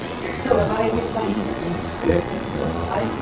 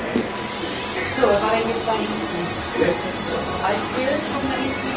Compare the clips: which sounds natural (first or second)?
second